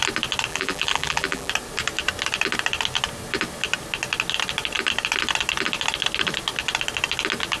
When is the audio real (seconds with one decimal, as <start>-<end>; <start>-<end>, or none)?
0.0-0.5; 1.5-7.6